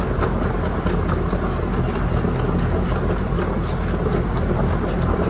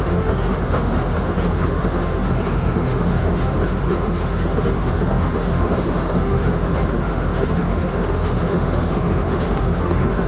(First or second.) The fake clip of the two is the second